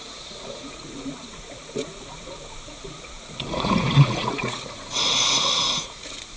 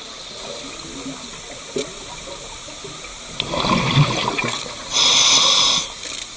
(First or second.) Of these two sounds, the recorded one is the second